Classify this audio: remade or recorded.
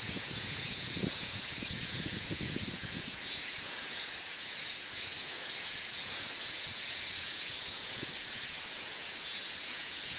remade